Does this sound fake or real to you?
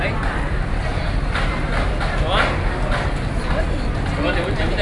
real